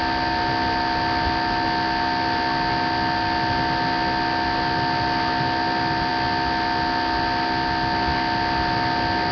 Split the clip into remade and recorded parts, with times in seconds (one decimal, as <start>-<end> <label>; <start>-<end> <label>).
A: 0.0-9.3 recorded

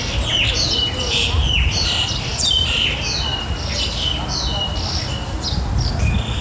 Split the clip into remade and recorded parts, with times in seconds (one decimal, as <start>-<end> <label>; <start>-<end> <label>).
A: 0.0-2.3 recorded; 2.3-2.8 remade; 2.8-6.4 recorded

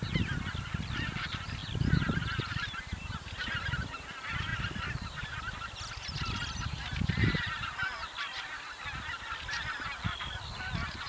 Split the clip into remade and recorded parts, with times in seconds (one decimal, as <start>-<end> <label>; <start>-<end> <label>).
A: 0.0-11.1 recorded

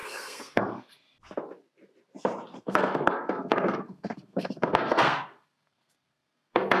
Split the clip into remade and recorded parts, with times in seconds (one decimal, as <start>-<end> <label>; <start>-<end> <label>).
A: 0.0-0.9 remade; 0.9-2.5 recorded; 2.5-6.8 remade

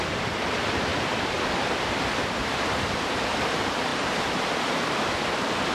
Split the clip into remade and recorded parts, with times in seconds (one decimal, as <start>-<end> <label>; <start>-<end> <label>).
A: 0.0-5.7 remade